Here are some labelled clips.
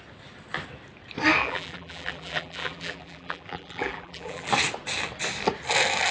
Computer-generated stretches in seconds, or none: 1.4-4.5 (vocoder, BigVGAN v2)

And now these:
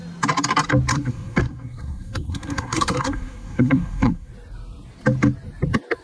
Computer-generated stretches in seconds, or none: 0.9-4.3 (codec, SNAC)

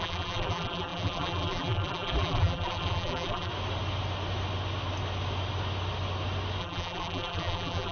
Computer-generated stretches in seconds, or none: 0.0-3.5 (vocoder, BigVGAN v2); 6.6-7.9

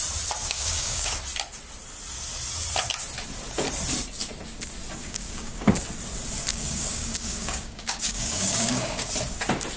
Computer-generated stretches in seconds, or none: 0.4-1.2 (codec, DAC); 5.0-5.7; 6.5-9.1

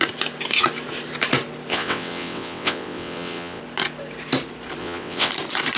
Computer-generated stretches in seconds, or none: 1.7-3.6 (vocoder, WaveNeXt); 4.8-5.3

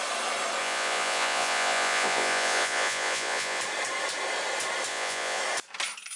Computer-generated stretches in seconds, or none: 0.6-3.6 (vocoder, Vocos); 4.9-5.4